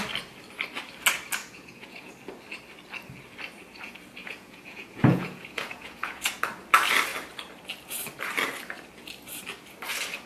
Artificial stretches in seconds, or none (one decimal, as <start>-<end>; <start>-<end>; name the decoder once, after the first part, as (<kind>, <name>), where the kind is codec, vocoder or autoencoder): 1.4-2.1 (vocoder, Vocos); 4.2-6.4